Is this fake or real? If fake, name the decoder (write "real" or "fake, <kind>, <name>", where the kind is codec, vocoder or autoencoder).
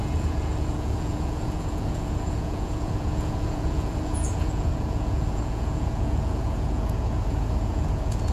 fake, vocoder, Vocos